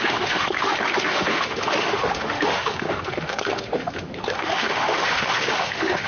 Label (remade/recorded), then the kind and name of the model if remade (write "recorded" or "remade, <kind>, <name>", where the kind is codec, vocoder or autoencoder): remade, autoencoder, DAC-VAE